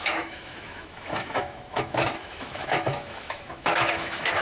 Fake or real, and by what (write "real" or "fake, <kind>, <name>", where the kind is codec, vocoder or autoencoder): fake, autoencoder, DAC-VAE